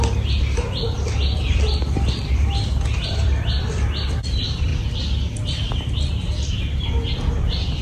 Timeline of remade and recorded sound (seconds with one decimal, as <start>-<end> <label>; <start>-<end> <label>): 0.0-4.7 remade; 4.7-7.3 recorded; 7.3-7.8 remade